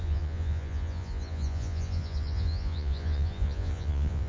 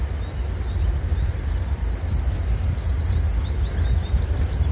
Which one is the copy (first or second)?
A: first